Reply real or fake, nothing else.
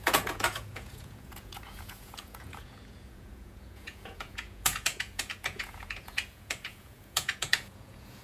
fake